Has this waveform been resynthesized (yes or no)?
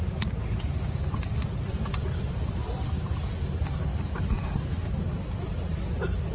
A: no